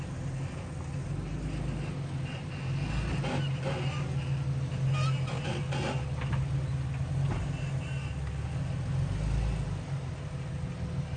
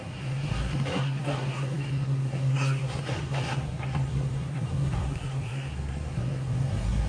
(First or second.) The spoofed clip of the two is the second